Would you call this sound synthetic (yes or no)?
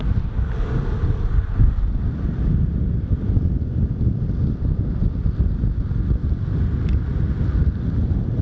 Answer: no